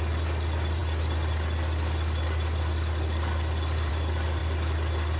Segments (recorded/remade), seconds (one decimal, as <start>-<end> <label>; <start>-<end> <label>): 0.0-5.2 recorded